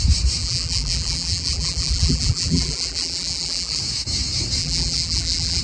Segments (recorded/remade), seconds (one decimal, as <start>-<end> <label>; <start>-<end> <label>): 0.0-0.4 recorded; 0.4-3.8 remade; 3.8-4.6 recorded; 4.6-5.6 remade